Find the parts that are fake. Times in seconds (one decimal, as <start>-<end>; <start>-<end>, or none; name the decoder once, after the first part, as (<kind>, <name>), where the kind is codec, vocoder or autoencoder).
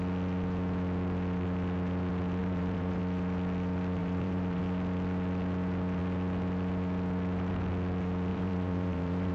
2.4-3.0 (vocoder, BigVGAN v2); 4.0-4.6; 8.3-9.3